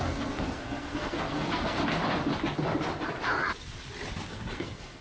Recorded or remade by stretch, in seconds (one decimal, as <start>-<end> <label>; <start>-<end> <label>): 0.0-1.8 remade; 1.8-4.3 recorded; 4.3-5.0 remade